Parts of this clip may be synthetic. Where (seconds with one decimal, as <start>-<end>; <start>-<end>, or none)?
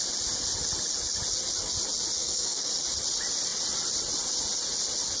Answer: 2.2-2.7